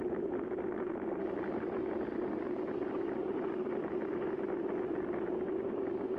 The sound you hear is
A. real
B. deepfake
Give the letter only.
A